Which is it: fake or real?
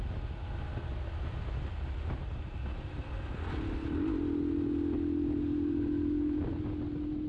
real